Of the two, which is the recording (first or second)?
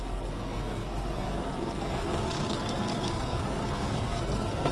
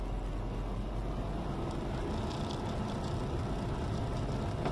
second